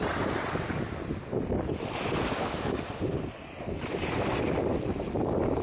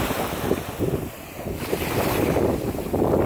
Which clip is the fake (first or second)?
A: second